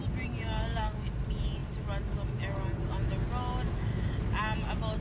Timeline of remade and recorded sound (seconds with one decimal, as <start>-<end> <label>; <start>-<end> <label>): 0.0-5.0 recorded